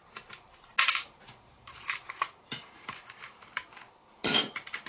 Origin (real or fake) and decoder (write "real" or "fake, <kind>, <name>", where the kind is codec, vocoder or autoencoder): fake, vocoder, BigVGAN v2